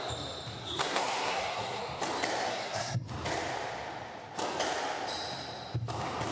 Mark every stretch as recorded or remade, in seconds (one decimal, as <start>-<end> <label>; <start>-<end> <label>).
0.0-0.6 recorded; 0.6-1.8 remade; 1.8-2.5 recorded; 2.5-3.1 remade; 3.1-6.3 recorded